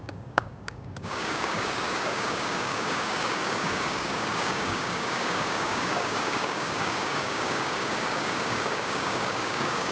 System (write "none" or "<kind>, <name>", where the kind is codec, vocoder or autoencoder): codec, DAC